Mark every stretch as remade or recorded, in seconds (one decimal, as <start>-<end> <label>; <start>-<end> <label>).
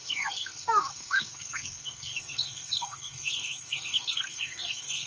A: 0.0-5.1 remade